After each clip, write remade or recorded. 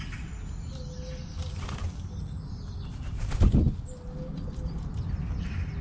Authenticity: recorded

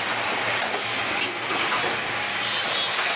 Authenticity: recorded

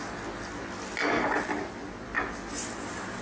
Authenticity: recorded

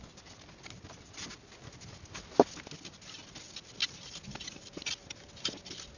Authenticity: recorded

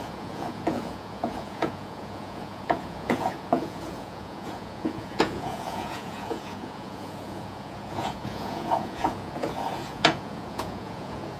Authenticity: remade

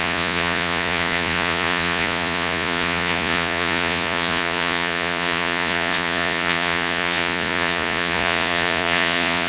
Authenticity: remade